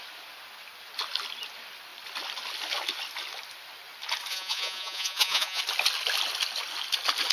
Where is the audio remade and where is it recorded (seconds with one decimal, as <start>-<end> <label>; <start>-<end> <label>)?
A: 0.0-4.3 recorded; 4.3-5.6 remade; 5.6-7.3 recorded